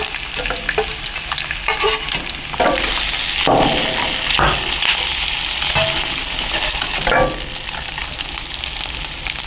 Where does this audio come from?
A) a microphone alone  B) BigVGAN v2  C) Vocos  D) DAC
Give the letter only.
A